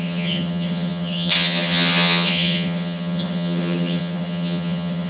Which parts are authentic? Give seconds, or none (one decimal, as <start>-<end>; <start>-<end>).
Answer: none